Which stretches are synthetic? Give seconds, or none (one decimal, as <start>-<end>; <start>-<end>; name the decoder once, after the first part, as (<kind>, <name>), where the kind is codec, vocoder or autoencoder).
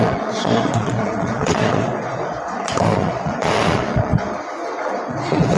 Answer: 0.0-4.1 (vocoder, Vocos); 5.1-5.6